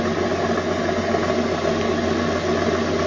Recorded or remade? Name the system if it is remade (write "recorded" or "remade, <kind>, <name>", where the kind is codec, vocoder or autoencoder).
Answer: recorded